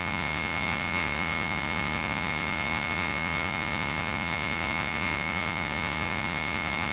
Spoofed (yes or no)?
yes